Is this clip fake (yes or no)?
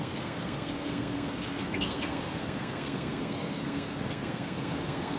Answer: yes